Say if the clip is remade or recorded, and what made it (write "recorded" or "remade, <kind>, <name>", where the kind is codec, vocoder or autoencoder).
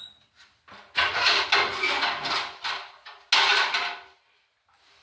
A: recorded